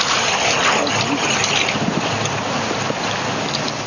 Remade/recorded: recorded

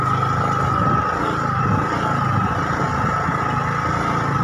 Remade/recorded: recorded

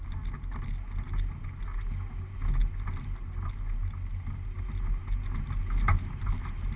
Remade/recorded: recorded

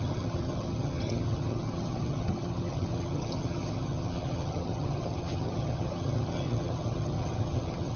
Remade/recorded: remade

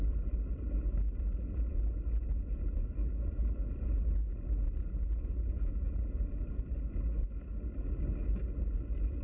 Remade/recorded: recorded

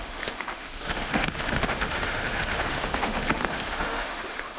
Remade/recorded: remade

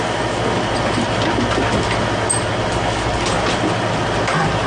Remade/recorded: recorded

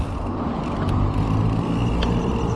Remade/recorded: recorded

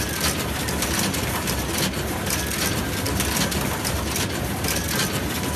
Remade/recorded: recorded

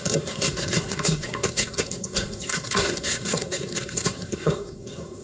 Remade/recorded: remade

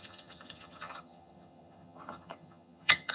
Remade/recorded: remade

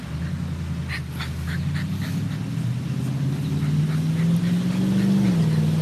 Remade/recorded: recorded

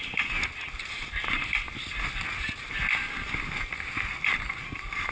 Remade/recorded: recorded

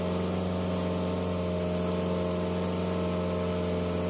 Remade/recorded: recorded